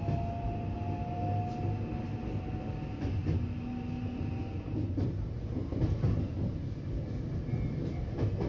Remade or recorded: recorded